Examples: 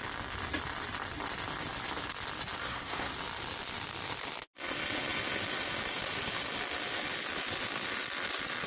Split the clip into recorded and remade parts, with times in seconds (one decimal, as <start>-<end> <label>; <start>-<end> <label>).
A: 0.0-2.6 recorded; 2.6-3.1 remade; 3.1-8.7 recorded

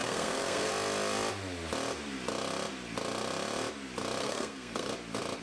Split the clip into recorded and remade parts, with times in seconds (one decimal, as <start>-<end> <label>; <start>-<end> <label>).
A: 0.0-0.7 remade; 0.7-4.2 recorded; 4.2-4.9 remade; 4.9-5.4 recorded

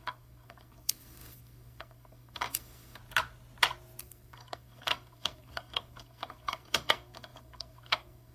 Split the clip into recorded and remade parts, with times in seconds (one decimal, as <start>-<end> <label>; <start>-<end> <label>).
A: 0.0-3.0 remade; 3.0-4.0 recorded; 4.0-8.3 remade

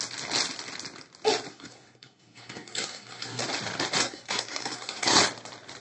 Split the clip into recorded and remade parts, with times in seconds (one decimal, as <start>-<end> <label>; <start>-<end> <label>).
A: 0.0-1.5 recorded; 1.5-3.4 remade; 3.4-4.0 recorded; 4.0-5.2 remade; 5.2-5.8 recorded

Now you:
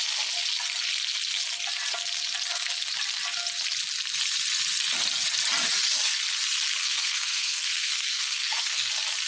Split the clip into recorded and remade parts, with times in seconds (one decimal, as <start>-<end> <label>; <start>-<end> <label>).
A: 0.0-6.8 recorded; 6.8-8.9 remade; 8.9-9.3 recorded